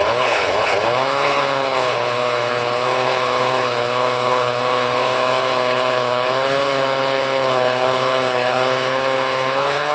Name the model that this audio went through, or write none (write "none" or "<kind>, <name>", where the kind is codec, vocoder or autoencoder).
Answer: codec, HILCodec